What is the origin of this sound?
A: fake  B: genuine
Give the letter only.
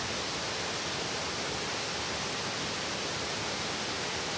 B